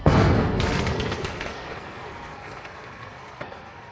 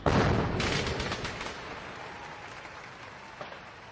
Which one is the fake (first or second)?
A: first